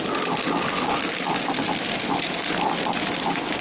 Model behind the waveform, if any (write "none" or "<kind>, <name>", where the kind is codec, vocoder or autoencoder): none